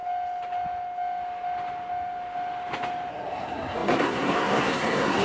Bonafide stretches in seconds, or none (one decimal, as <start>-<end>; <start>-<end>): 0.0-3.1